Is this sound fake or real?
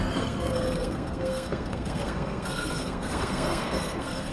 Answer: fake